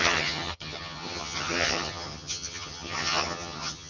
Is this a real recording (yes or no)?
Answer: no